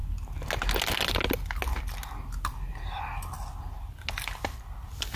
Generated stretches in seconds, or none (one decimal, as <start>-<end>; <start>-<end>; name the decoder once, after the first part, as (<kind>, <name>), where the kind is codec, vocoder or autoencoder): none